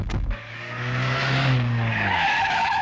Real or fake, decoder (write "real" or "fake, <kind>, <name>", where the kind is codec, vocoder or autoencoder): fake, codec, DAC